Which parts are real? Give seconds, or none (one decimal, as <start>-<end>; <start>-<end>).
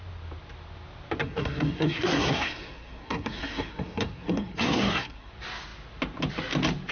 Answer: 0.0-1.2; 5.3-6.9